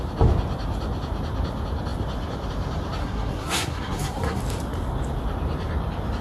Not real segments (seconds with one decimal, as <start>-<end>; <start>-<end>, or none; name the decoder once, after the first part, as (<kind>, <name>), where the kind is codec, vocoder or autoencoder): 3.0-4.4 (codec, SNAC)